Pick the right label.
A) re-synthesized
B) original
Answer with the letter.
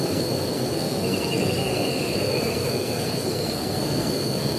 A